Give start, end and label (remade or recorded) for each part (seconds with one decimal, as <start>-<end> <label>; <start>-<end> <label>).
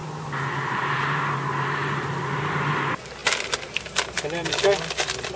0.0-5.4 recorded